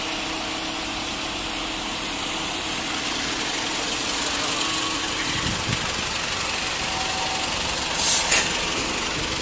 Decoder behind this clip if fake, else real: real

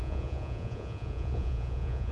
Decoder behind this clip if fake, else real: fake, vocoder, Vocos